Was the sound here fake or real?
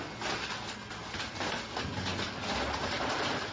real